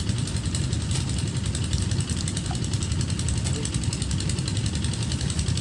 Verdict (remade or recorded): recorded